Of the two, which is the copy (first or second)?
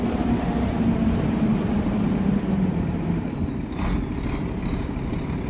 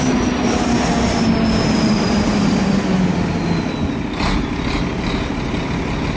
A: first